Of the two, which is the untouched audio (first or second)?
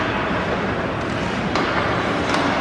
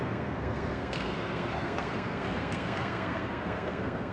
first